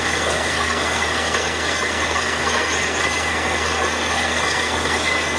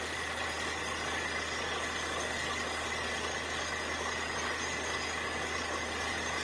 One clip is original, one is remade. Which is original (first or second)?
second